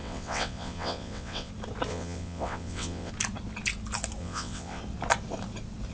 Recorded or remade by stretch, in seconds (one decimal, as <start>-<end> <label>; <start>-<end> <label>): 0.0-1.5 remade; 1.5-1.9 recorded; 1.9-3.1 remade; 3.1-4.2 recorded; 4.2-4.8 remade; 4.8-5.9 recorded